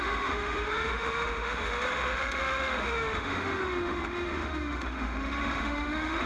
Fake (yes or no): yes